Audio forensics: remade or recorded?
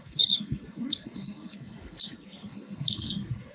remade